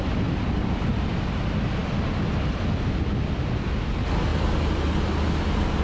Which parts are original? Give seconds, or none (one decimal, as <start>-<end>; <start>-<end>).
0.0-5.8